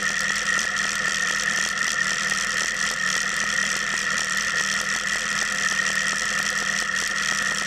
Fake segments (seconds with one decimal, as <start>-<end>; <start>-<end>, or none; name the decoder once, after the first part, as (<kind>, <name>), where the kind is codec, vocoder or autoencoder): 0.0-4.6 (vocoder, BigVGAN v2)